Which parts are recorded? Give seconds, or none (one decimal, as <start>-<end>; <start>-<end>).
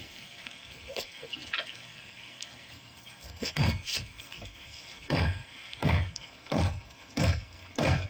none